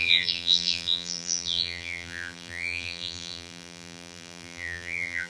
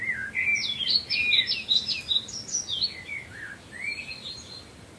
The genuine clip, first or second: second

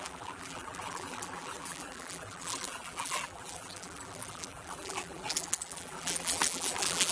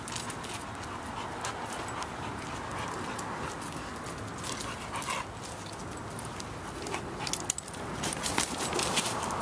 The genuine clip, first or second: second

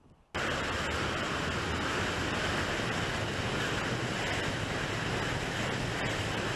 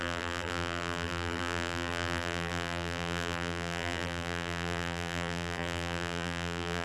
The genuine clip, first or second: first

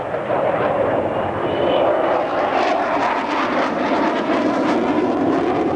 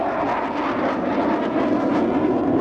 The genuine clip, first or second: second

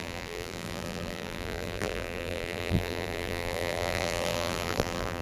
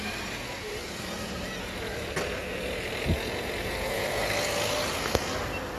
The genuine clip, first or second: second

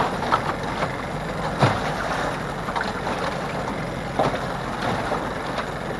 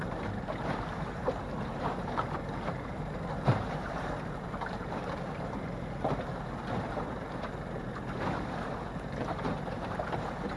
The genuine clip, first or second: first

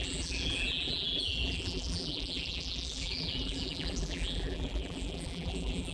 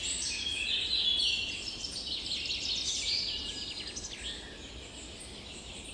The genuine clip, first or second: second